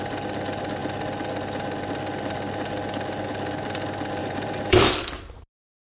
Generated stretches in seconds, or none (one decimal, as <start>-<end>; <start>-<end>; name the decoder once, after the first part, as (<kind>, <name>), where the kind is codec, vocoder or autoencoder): 4.2-4.9 (vocoder, BigVGAN v2)